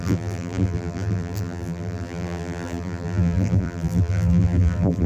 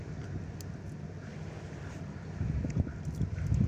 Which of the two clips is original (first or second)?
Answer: second